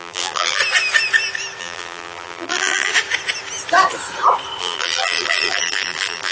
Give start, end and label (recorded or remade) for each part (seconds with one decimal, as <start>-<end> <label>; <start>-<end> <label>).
0.0-0.6 remade; 0.6-1.6 recorded; 1.6-2.9 remade; 2.9-4.6 recorded; 4.6-6.3 remade